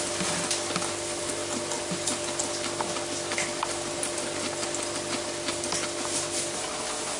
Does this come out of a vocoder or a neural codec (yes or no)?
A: no